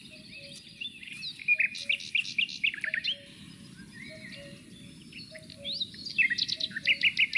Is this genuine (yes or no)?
yes